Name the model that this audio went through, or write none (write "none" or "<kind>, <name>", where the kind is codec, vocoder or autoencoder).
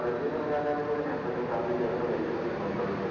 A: none